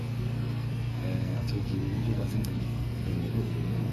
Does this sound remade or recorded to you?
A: remade